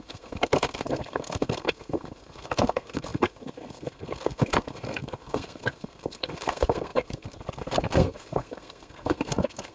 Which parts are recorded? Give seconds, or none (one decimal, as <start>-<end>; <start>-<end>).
none